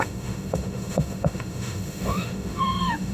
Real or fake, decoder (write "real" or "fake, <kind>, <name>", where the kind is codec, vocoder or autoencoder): fake, autoencoder, DAC-VAE